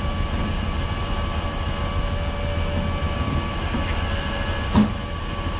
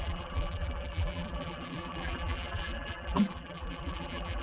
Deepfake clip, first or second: second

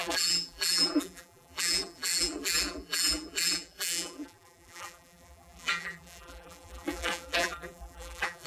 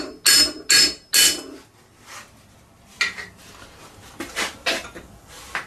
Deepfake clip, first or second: first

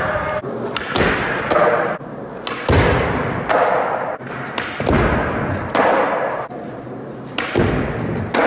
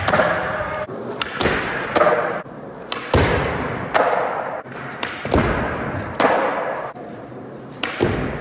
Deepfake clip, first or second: second